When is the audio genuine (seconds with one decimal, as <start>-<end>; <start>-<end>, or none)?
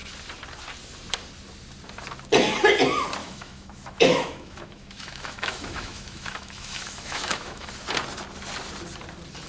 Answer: 0.0-3.2; 7.7-9.5